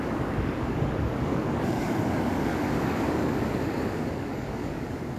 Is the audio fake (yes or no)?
yes